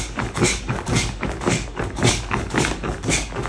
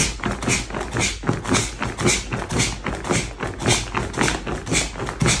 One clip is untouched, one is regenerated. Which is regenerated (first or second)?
first